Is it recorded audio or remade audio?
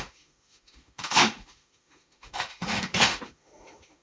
remade